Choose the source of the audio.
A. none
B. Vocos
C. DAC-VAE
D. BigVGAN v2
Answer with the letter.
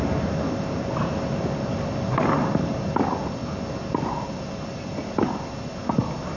A